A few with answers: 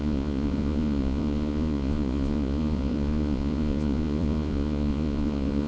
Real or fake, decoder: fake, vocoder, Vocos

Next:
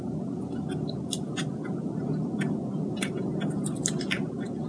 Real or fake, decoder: real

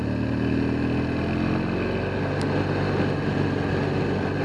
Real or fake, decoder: real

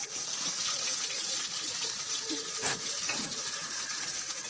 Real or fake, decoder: fake, vocoder, Vocos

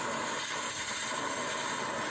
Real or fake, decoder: real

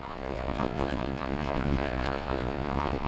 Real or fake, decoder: fake, vocoder, Vocos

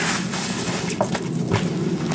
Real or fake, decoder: real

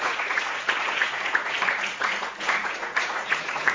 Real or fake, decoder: fake, vocoder, Vocos